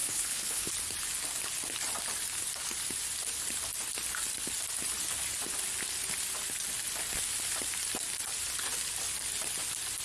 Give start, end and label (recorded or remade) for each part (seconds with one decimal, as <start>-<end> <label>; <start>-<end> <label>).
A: 0.0-0.7 remade; 0.7-10.0 recorded